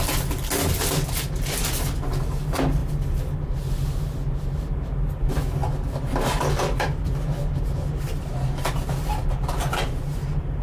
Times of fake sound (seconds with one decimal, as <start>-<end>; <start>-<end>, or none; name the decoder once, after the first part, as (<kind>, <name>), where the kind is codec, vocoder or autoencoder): none